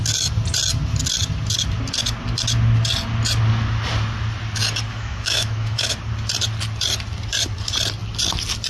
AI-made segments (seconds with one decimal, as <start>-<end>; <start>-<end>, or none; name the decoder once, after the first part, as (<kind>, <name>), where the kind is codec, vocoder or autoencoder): 4.9-5.9 (autoencoder, DAC-VAE)